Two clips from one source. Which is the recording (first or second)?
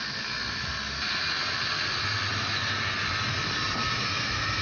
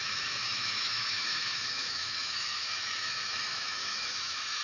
first